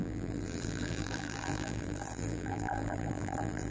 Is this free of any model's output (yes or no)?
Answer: no